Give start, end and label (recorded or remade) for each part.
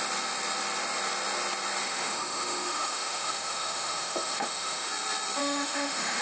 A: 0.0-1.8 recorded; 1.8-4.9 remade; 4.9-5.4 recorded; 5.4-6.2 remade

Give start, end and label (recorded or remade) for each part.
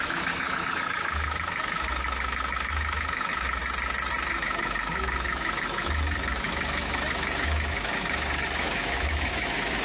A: 0.0-3.6 remade; 3.6-4.3 recorded; 4.3-9.8 remade